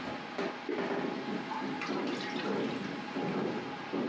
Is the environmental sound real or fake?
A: real